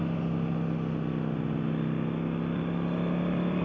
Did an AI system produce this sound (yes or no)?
no